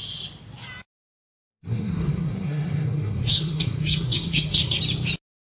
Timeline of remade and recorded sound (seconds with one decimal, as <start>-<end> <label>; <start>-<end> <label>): 0.0-1.5 recorded; 1.5-4.8 remade; 4.8-5.5 recorded